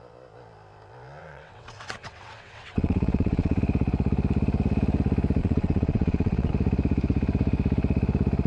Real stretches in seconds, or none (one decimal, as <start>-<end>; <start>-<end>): 0.0-1.2; 3.6-5.4; 6.5-8.5